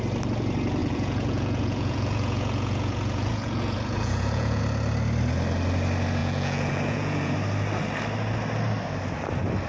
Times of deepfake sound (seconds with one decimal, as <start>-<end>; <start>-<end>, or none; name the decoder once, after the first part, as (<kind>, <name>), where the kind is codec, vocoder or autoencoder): 0.8-4.6 (vocoder, Vocos); 6.2-7.3